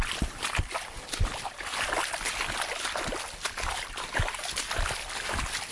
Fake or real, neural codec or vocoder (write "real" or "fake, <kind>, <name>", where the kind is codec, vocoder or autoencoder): real